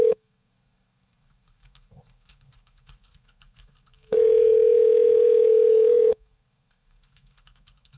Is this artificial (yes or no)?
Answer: yes